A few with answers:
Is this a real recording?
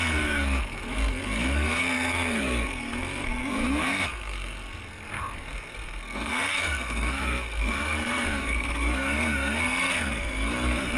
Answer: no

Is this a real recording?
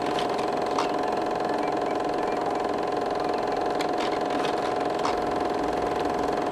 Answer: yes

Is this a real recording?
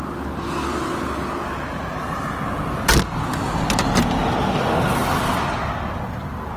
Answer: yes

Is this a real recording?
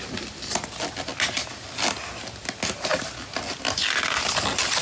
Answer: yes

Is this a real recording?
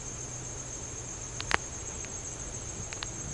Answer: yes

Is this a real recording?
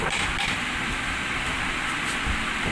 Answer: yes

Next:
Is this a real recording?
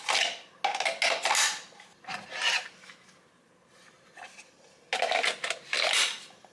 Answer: yes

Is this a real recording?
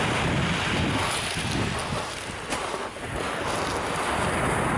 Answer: yes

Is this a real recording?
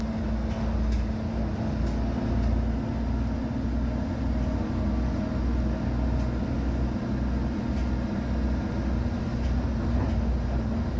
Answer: yes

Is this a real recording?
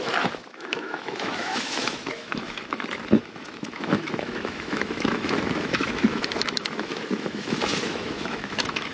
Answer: no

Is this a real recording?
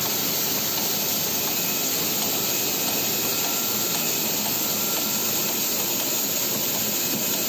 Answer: yes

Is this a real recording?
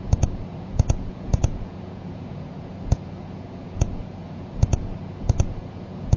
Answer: no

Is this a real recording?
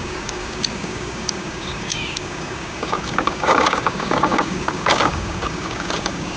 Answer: no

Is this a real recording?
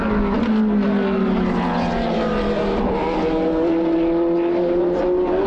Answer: yes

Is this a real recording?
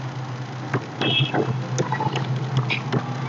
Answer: yes